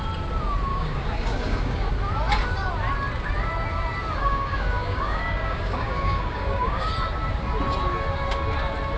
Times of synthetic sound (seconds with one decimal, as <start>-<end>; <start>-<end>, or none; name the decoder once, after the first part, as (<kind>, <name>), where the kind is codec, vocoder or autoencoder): 0.7-1.9 (codec, DAC); 4.2-6.9